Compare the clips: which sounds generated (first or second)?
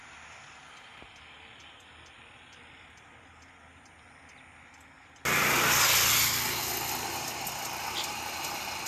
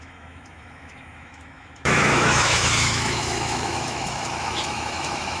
second